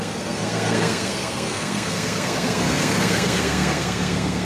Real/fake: fake